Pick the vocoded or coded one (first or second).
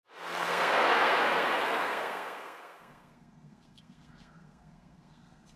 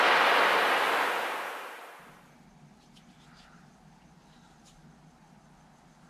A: first